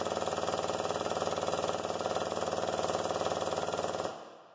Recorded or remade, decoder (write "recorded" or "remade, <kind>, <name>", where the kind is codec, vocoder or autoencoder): recorded